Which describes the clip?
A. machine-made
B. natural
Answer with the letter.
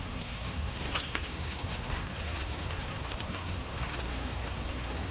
A